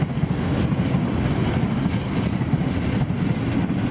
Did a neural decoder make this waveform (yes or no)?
no